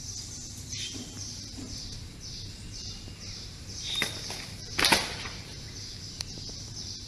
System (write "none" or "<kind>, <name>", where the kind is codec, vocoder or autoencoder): vocoder, BigVGAN v2